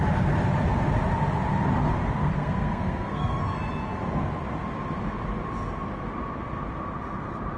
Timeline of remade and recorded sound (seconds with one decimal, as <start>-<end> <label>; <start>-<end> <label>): 0.0-2.2 recorded; 2.2-3.4 remade; 3.4-7.6 recorded